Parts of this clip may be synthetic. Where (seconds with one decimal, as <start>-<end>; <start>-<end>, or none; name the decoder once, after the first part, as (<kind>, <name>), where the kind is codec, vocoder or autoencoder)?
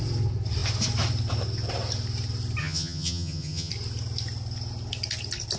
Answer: 2.6-3.7 (vocoder, HiFi-GAN)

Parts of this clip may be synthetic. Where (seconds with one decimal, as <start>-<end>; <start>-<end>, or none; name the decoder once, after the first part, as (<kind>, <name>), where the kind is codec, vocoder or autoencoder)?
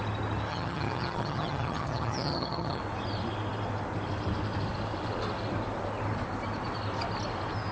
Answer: 0.5-2.8 (vocoder, HiFi-GAN)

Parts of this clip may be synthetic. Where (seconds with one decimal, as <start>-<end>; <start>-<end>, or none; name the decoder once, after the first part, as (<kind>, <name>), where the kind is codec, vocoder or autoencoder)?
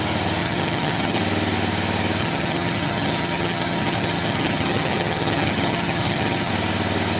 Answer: 0.4-1.2 (vocoder, HiFi-GAN); 2.2-6.5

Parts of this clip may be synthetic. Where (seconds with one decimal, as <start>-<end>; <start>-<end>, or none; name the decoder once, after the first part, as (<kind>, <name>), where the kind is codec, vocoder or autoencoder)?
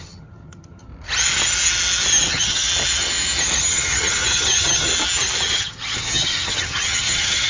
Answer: 0.0-0.9 (vocoder, HiFi-GAN); 2.3-2.7; 3.6-4.9; 5.5-7.5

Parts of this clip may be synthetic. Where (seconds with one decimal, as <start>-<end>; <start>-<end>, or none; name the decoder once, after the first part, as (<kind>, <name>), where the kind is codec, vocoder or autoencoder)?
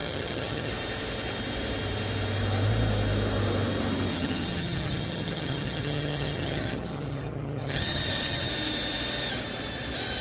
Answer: 0.0-0.7 (vocoder, HiFi-GAN); 4.1-8.5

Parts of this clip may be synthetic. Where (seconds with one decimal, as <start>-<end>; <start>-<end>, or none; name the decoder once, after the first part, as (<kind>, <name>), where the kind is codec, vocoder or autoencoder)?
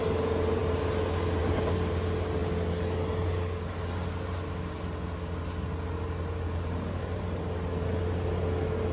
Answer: none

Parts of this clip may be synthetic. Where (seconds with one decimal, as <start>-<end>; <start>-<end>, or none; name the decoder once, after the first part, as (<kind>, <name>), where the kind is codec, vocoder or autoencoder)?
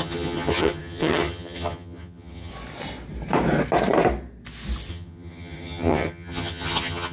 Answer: 0.0-2.5 (vocoder, HiFi-GAN); 4.9-7.1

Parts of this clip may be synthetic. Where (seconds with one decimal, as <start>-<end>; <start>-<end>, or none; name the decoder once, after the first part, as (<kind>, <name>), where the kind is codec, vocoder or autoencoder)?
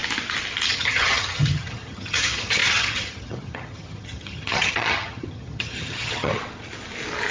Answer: 0.7-6.4 (vocoder, HiFi-GAN)